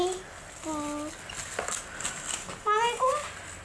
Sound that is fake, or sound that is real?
real